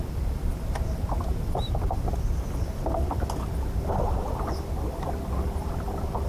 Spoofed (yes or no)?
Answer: no